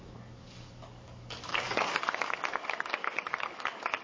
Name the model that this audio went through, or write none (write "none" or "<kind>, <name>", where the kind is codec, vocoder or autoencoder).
codec, DAC